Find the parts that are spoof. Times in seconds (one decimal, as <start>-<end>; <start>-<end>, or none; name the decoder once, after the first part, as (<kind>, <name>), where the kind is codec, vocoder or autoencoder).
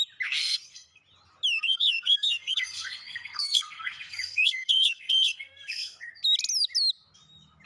0.4-1.0 (codec, SNAC); 1.6-6.1